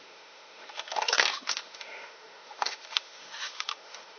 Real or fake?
fake